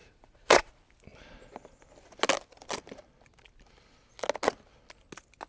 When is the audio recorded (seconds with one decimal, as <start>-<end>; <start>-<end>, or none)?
0.7-5.5